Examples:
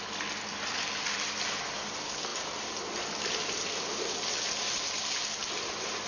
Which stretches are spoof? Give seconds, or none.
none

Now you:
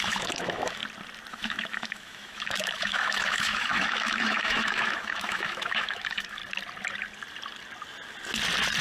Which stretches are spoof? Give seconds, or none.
0.0-0.8 (autoencoder, DAC-VAE); 1.3-6.4

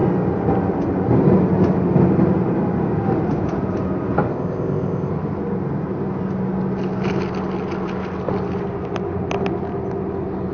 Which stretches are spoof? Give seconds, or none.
4.3-5.1 (codec, ZipCodec)